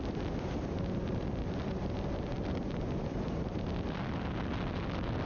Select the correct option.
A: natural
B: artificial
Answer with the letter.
A